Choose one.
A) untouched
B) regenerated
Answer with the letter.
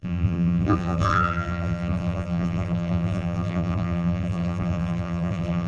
B